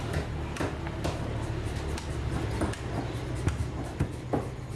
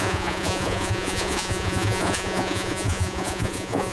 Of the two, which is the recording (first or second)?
first